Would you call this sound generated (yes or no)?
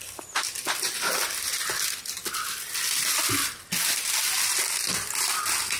no